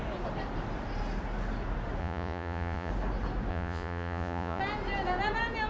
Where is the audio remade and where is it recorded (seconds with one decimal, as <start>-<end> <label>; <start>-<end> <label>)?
0.0-2.0 recorded; 2.0-2.9 remade; 2.9-3.5 recorded; 3.5-4.6 remade; 4.6-5.7 recorded